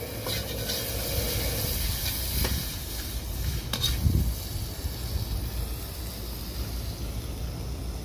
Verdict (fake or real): real